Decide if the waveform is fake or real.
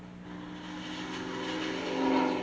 real